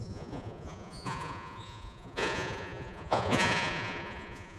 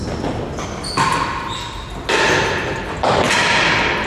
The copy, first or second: first